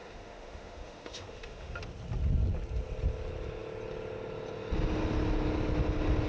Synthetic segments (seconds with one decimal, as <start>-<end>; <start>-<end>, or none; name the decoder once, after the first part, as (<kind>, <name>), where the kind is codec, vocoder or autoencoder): 0.0-1.8 (autoencoder, DAC-VAE)